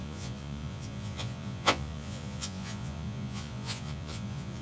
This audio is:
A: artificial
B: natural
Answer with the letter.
A